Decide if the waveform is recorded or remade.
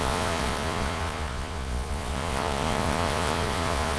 remade